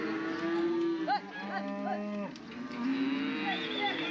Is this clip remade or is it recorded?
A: recorded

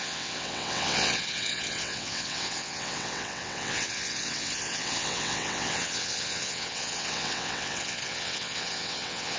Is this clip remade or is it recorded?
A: remade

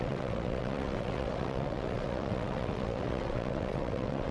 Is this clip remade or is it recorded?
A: remade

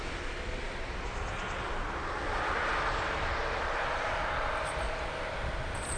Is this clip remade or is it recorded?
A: recorded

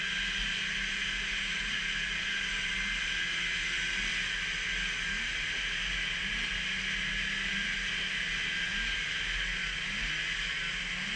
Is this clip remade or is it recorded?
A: recorded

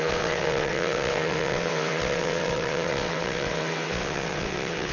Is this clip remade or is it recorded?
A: remade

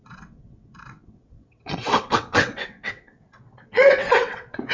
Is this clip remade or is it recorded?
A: remade